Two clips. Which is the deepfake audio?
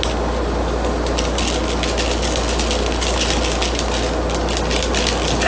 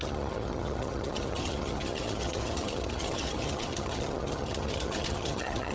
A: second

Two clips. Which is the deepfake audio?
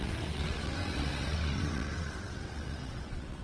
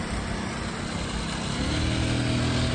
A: first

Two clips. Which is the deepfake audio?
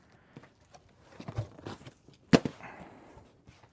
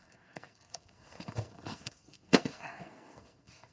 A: second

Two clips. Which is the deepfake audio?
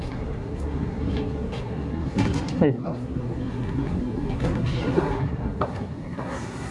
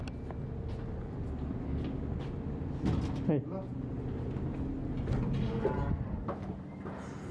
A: first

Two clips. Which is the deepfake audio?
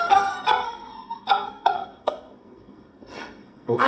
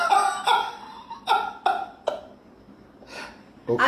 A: first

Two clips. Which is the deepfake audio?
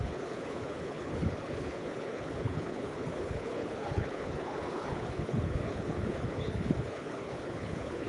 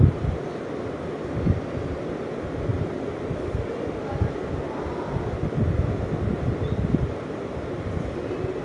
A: first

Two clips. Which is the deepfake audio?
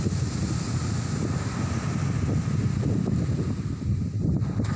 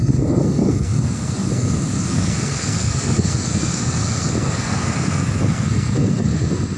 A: second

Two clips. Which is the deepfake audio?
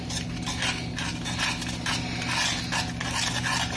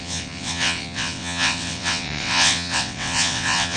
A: second